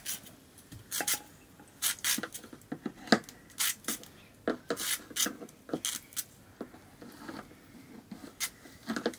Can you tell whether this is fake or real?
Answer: real